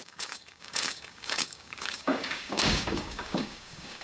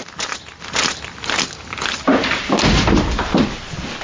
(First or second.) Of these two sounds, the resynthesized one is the first